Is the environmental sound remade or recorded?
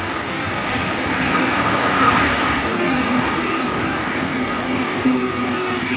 remade